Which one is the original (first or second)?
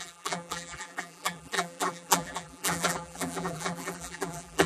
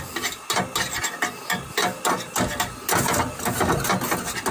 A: second